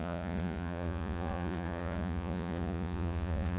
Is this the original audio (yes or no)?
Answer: no